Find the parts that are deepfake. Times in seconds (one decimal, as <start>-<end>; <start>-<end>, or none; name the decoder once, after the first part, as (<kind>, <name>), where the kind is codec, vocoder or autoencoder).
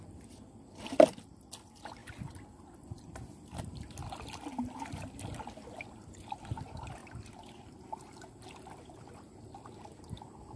0.0-2.0 (vocoder, BigVGAN v2); 3.6-7.0; 9.0-10.6